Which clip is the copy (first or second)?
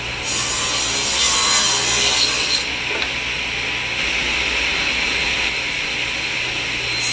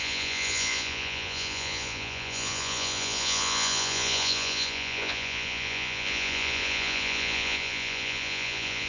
second